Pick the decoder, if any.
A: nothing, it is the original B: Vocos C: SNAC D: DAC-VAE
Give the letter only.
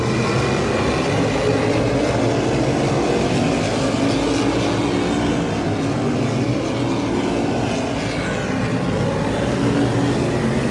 A